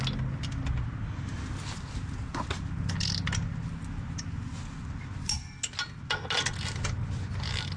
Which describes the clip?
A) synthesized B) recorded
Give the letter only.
B